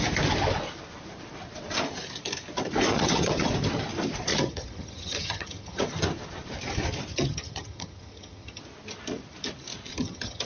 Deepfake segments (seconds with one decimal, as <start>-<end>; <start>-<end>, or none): 2.9-3.5; 4.3-5.8; 7.1-8.6; 9.9-10.4

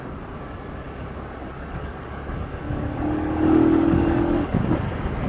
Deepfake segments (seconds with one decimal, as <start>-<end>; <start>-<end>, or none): 1.4-4.6